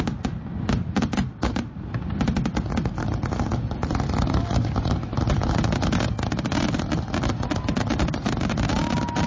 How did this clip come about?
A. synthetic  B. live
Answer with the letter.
B